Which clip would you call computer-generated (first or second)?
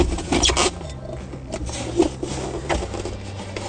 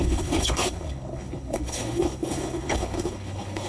second